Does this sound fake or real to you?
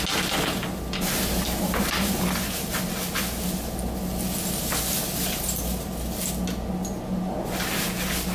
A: real